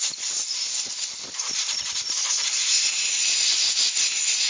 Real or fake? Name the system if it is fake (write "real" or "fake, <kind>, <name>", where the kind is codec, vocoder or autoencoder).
real